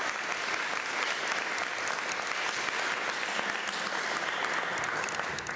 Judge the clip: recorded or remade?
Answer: recorded